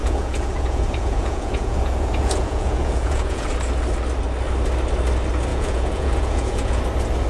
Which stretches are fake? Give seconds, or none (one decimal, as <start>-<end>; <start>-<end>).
0.0-3.5; 5.5-6.8